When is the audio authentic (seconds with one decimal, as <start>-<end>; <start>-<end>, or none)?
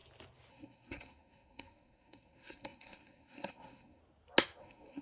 0.0-0.5; 4.0-4.6